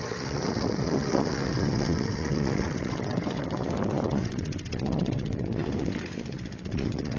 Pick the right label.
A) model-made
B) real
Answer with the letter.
A